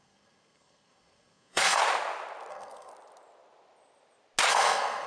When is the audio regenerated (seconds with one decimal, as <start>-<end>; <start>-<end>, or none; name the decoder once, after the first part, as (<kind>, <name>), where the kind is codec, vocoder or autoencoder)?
0.0-1.8 (codec, SNAC); 2.5-2.9; 4.5-5.1